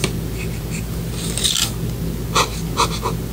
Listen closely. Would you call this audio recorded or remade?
recorded